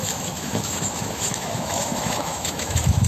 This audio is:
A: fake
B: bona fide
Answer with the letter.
A